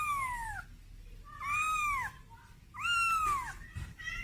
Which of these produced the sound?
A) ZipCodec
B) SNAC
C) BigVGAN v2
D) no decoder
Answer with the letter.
D